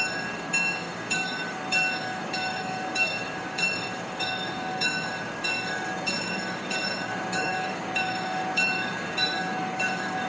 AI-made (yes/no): yes